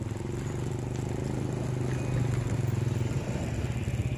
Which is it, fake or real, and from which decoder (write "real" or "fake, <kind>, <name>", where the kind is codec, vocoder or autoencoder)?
real